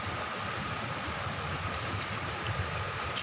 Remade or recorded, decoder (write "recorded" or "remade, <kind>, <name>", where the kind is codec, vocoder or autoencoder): remade, vocoder, BigVGAN v2